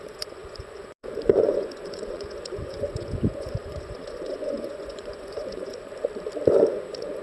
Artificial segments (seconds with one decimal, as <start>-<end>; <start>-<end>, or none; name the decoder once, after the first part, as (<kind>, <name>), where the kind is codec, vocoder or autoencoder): 0.0-5.9 (vocoder, Vocos); 6.6-7.2